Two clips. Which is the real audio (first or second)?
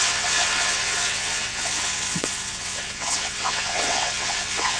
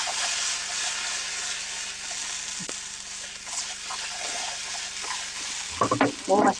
second